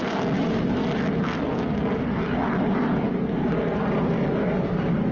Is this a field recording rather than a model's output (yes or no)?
yes